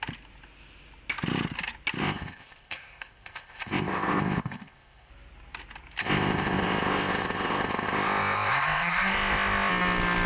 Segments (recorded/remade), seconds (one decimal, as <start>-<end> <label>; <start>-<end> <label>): 0.0-2.0 recorded; 2.0-5.1 remade; 5.1-6.0 recorded; 6.0-9.7 remade; 9.7-10.3 recorded